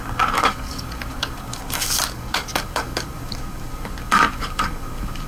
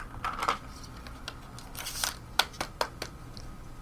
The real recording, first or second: second